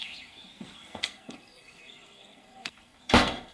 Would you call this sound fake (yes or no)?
yes